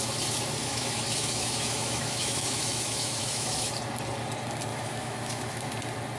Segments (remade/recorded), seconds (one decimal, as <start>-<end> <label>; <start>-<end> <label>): 0.0-0.6 recorded; 0.6-3.7 remade; 3.7-4.7 recorded; 4.7-5.7 remade; 5.7-6.2 recorded